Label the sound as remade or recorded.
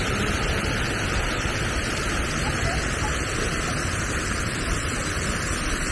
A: remade